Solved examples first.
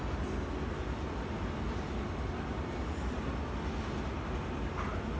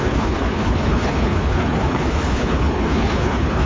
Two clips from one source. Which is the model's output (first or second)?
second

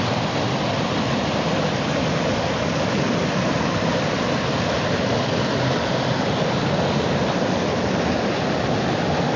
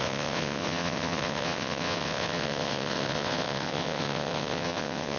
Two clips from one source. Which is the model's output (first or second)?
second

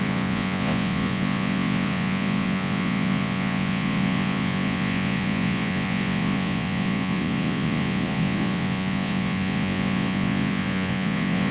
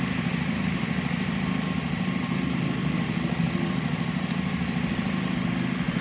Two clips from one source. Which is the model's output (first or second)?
first